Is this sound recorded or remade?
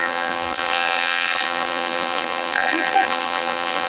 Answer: remade